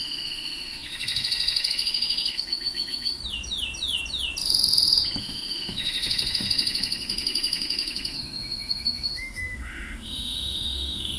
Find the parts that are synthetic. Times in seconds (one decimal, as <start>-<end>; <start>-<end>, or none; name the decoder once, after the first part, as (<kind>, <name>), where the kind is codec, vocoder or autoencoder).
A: 0.0-3.2 (autoencoder, DAC-VAE); 5.2-11.2